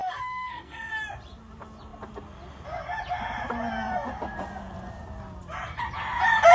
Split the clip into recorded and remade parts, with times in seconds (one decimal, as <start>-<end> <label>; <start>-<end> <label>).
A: 0.0-0.9 remade; 0.9-6.5 recorded